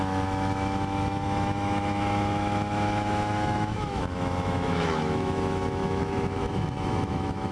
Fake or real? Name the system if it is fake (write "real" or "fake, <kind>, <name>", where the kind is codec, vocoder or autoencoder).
fake, autoencoder, DAC-VAE